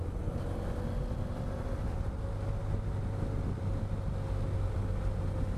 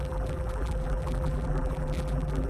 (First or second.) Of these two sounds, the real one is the first